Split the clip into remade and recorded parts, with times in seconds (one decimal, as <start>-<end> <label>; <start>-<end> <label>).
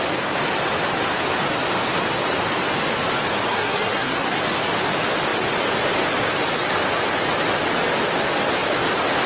0.0-3.5 recorded; 3.5-4.4 remade; 4.4-9.3 recorded